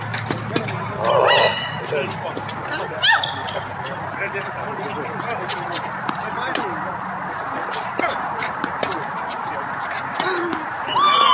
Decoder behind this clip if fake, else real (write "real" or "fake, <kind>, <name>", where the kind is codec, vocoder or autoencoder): real